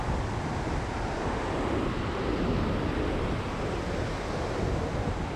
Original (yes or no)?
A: yes